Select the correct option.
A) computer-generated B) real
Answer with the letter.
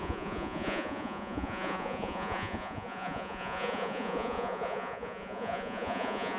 A